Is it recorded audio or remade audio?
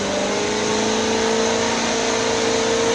recorded